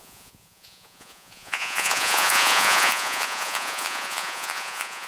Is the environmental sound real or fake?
fake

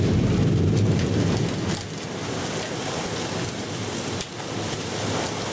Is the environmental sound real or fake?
real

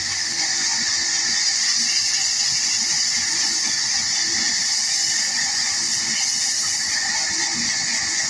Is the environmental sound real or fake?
fake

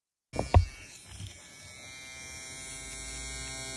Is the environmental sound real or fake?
real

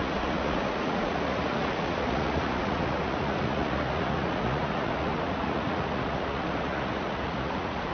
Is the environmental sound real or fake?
fake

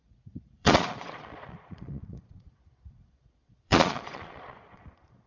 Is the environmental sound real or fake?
fake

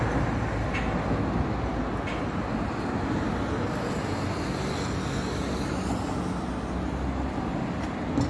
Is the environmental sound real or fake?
real